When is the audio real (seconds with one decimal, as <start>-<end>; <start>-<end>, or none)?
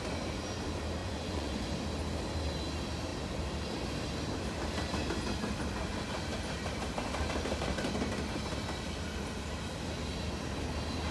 0.0-1.0; 1.7-11.1